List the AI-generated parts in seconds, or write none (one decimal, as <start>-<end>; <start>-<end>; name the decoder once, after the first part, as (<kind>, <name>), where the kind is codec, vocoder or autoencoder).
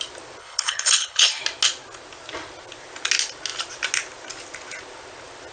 0.4-1.4 (codec, HILCodec)